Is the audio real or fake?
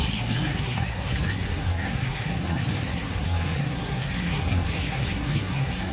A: fake